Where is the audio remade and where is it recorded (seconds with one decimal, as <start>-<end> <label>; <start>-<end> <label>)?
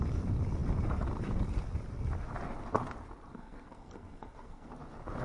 0.0-3.3 recorded; 3.3-4.7 remade; 4.7-5.2 recorded